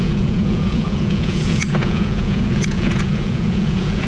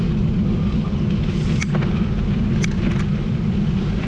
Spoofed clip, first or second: first